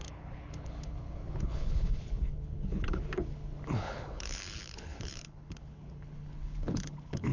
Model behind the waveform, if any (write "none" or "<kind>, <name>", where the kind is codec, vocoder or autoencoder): codec, HILCodec